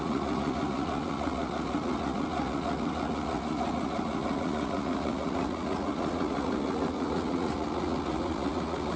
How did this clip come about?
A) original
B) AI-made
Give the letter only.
B